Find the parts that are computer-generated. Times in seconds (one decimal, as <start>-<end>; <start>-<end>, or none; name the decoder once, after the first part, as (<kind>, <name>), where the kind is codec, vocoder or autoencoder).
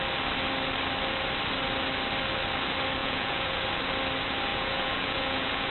3.0-3.8 (vocoder, Vocos); 4.5-5.7